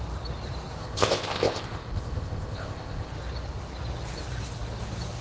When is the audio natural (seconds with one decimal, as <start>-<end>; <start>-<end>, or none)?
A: 0.0-0.8; 3.1-5.2